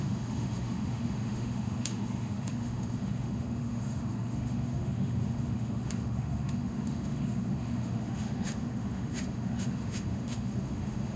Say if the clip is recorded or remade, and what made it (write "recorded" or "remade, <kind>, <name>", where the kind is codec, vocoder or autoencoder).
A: remade, autoencoder, DAC-VAE